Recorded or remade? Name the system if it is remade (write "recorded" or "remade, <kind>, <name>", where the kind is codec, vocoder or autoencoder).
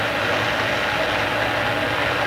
recorded